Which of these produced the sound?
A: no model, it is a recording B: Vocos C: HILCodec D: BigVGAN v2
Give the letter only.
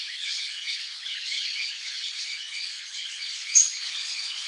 C